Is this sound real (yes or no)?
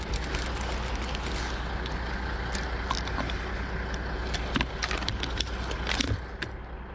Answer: yes